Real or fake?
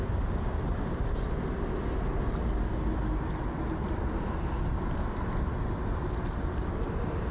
real